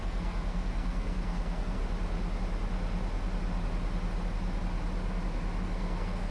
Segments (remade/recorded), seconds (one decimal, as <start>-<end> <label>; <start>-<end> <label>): 0.0-1.8 remade; 1.8-5.6 recorded; 5.6-6.3 remade